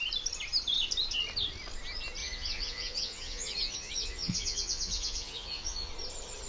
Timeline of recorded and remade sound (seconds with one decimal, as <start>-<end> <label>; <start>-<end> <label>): 0.0-2.2 recorded; 2.2-5.9 remade; 5.9-6.5 recorded